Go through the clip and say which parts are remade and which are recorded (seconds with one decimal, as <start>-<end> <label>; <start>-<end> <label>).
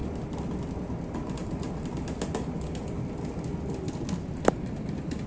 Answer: 0.0-5.3 recorded